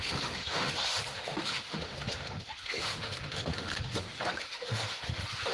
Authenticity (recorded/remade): remade